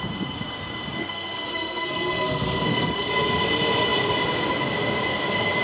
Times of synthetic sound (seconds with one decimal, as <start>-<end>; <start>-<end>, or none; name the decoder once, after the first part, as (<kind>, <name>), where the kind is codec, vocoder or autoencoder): 1.0-3.1 (codec, SNAC)